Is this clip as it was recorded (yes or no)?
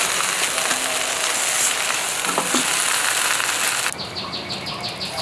yes